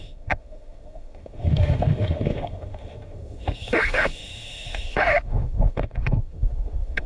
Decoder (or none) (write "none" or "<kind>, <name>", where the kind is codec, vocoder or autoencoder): autoencoder, DAC-VAE